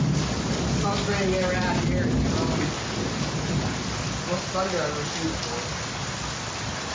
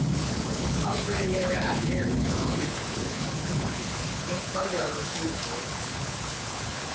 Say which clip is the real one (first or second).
first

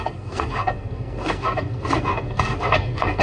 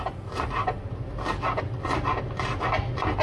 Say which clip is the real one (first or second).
second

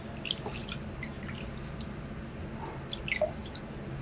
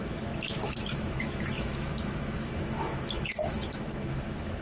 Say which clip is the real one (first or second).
first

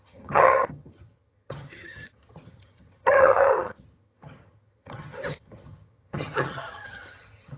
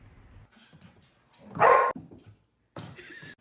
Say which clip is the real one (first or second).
second